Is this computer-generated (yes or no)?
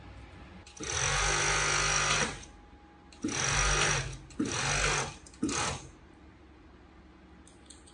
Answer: no